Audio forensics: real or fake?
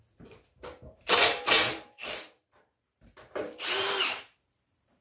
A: fake